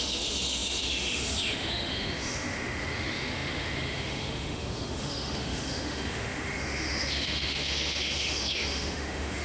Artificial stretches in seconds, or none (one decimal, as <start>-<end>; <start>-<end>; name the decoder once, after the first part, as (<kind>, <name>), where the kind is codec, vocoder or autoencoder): 0.0-9.4 (autoencoder, DAC-VAE)